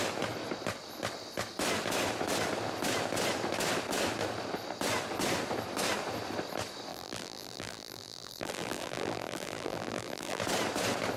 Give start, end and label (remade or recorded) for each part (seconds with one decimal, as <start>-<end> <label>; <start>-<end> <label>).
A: 0.0-6.9 recorded; 6.9-10.4 remade; 10.4-11.2 recorded